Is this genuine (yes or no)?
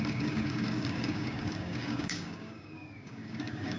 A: no